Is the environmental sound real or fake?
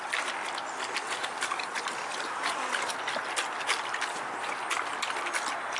real